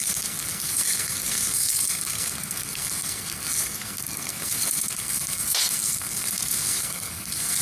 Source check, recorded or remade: remade